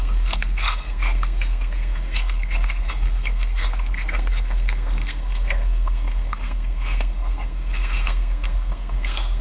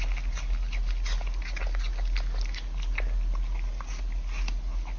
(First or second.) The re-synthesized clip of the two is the first